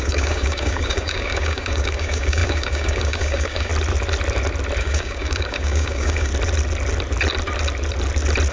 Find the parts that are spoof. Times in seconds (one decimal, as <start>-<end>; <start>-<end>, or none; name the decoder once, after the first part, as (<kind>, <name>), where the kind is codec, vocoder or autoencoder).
0.0-3.7 (codec, DAC); 4.8-6.3